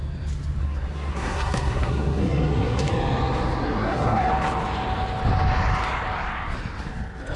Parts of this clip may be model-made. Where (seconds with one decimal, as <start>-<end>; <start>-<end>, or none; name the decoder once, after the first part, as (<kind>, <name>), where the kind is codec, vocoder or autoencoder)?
0.6-2.9 (codec, SNAC); 3.6-4.3